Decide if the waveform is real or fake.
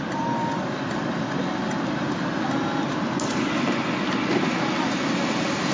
real